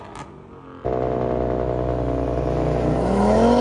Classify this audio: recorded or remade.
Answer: recorded